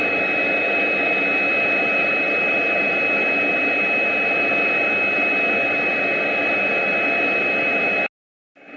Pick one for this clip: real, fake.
real